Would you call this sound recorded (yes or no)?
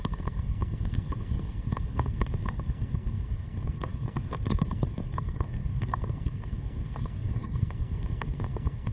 no